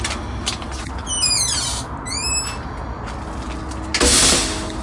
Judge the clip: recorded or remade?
recorded